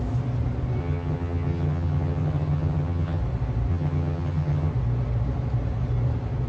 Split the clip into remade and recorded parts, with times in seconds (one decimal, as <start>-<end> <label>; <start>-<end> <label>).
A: 0.0-0.8 recorded; 0.8-3.2 remade; 3.2-3.7 recorded; 3.7-4.7 remade; 4.7-6.5 recorded